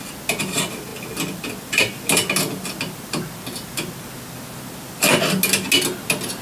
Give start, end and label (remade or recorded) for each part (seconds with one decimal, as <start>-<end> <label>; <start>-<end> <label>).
0.0-6.4 recorded